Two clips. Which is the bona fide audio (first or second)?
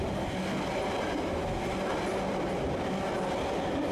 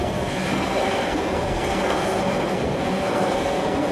first